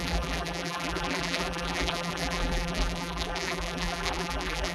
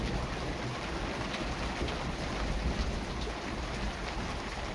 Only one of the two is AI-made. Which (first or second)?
first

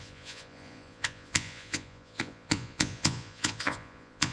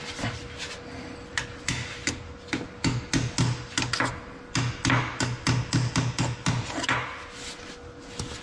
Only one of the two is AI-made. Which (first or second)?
first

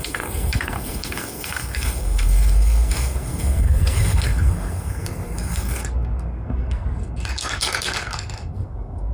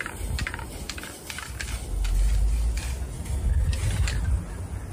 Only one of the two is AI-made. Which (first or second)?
first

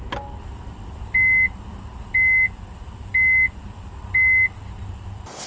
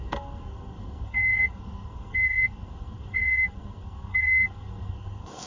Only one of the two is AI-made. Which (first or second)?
second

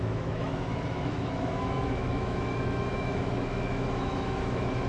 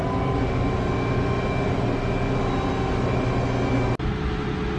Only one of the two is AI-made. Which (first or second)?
first